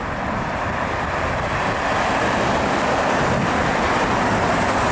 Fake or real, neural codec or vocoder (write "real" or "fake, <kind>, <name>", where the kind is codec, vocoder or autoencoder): real